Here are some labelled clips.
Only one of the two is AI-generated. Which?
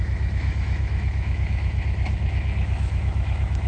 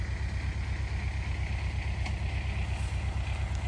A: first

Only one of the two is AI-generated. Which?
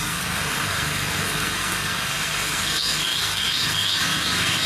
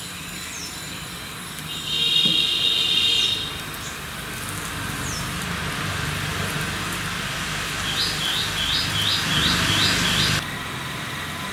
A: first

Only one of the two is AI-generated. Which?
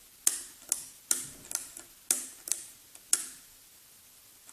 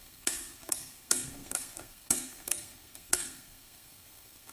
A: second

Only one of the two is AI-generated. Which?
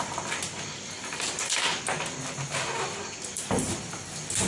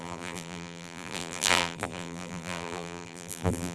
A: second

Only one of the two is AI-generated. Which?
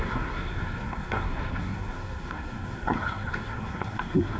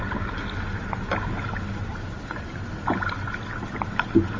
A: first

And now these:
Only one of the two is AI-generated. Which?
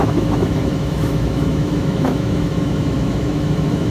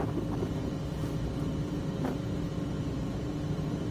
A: first